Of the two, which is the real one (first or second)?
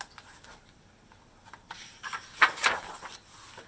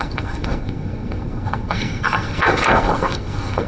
first